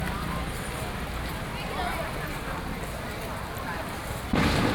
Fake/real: real